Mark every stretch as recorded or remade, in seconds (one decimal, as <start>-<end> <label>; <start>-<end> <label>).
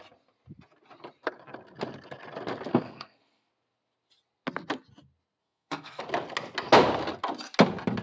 0.0-2.7 recorded; 2.7-3.5 remade; 3.5-5.4 recorded; 5.4-6.0 remade; 6.0-8.0 recorded